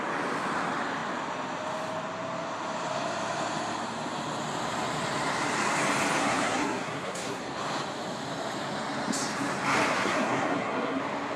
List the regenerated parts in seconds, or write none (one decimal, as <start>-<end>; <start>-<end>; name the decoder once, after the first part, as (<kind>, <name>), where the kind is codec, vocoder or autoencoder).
6.2-7.4 (codec, SNAC); 9.9-11.0